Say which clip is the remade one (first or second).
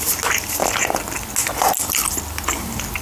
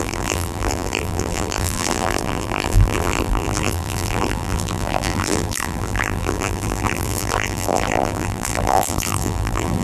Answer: second